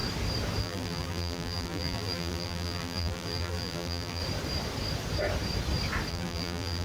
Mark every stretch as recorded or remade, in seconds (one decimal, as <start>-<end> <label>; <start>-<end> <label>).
0.0-0.6 recorded; 0.6-4.2 remade; 4.2-6.1 recorded; 6.1-6.8 remade